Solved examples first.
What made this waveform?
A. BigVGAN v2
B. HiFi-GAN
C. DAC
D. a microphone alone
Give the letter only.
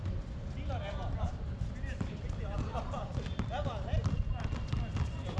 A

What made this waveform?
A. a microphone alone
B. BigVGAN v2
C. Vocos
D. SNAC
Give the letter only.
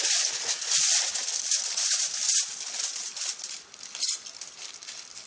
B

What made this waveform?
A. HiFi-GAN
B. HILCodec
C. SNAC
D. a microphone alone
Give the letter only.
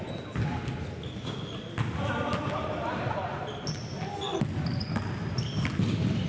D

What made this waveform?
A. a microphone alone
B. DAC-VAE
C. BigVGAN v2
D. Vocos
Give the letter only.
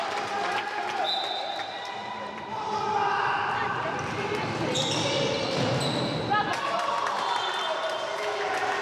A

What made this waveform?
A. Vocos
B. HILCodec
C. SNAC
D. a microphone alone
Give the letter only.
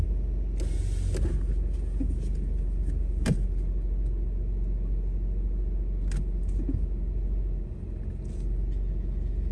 D